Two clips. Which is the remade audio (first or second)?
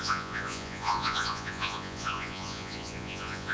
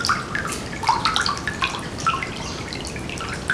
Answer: first